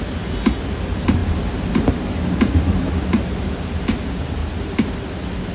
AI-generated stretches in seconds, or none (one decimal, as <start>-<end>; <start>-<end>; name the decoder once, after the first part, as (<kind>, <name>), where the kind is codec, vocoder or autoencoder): 1.2-3.6 (vocoder, BigVGAN v2); 4.4-4.9